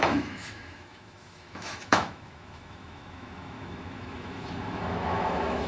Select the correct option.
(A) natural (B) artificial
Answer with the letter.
B